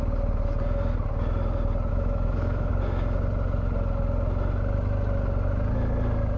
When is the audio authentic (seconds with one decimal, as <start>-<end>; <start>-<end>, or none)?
0.0-1.9; 2.7-6.4